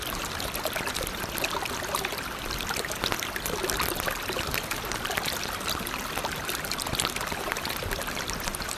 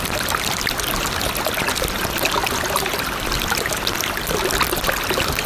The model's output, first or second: first